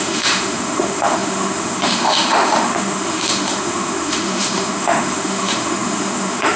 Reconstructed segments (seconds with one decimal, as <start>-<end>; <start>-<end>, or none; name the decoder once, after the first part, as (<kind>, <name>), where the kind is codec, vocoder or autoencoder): 0.0-6.6 (autoencoder, DAC-VAE)